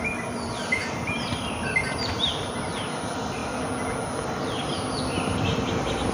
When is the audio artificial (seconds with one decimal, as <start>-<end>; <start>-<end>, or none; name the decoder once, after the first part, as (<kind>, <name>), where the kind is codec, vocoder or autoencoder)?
0.0-3.4 (vocoder, BigVGAN v2); 4.4-6.1